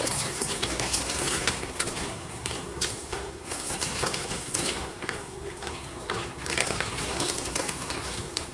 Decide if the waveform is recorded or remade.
remade